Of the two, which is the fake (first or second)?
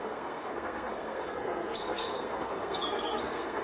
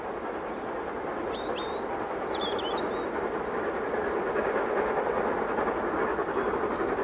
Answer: first